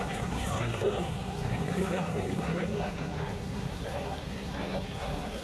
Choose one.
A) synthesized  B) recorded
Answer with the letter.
A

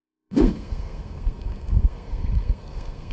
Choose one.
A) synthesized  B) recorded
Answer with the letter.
A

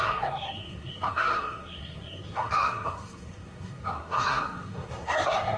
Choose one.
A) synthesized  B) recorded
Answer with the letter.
A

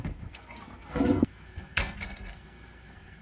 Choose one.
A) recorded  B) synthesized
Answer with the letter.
B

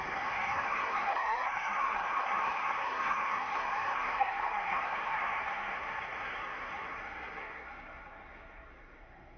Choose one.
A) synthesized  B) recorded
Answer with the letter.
A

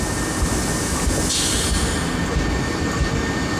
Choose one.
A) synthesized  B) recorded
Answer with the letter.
B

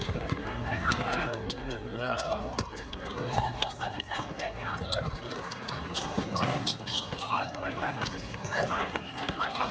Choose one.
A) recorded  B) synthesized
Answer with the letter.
B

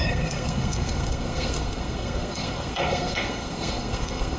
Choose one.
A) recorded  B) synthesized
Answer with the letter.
B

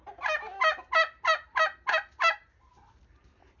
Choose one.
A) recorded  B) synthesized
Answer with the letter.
A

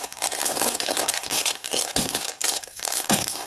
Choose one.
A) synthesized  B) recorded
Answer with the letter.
A